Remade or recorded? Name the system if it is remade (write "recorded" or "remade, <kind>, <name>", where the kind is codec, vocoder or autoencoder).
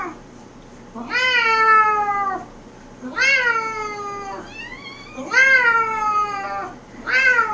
recorded